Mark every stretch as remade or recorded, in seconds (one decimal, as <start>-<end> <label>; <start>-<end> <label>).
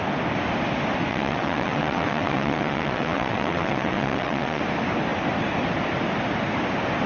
0.0-1.1 recorded; 1.1-4.6 remade; 4.6-7.1 recorded